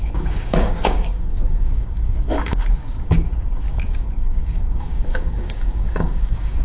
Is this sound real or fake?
fake